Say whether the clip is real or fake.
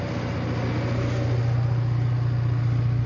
real